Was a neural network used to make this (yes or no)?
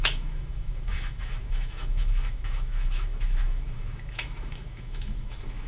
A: yes